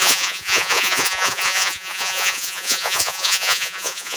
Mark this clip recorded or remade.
remade